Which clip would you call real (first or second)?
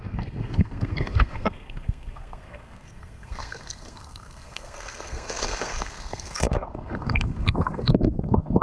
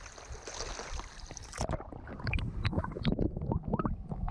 second